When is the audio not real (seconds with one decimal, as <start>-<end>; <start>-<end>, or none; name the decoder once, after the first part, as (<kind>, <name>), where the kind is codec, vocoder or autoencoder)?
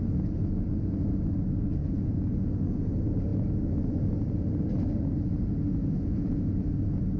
1.8-2.5 (vocoder, Vocos); 5.8-6.5